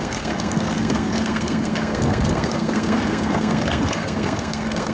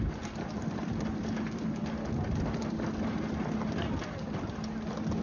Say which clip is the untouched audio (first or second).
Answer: second